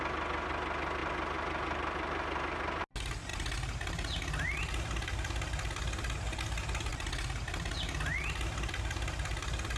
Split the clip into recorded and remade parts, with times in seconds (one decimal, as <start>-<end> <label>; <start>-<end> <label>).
0.0-9.8 recorded